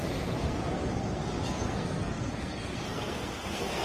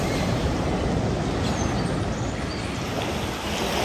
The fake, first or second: first